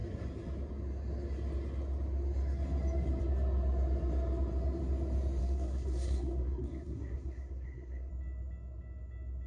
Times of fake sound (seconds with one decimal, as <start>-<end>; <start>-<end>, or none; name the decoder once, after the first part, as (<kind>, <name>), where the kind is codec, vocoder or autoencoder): 5.4-8.1 (codec, SNAC)